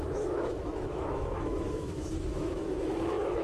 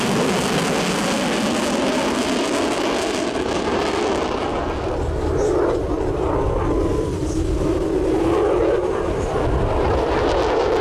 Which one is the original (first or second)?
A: second